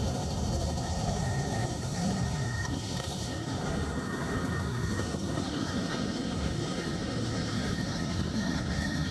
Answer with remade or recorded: remade